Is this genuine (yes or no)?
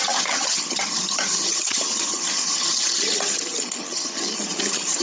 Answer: no